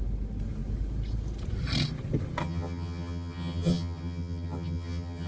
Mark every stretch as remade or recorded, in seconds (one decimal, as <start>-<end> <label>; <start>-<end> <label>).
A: 0.0-2.4 recorded; 2.4-5.3 remade